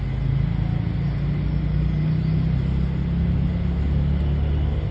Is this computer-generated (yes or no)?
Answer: no